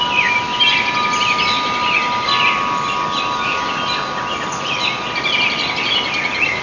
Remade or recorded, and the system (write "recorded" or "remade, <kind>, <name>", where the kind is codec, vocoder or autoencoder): recorded